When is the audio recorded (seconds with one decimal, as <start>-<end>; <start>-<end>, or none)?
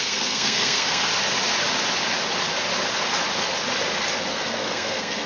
1.1-4.3